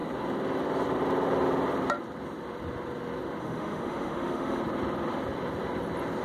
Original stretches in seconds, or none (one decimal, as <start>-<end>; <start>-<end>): 0.0-3.4; 4.6-6.2